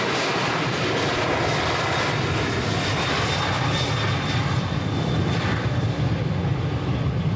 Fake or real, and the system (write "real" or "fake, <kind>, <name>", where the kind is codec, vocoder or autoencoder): real